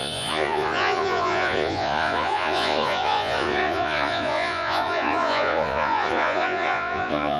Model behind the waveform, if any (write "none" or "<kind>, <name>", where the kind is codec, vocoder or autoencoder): vocoder, Vocos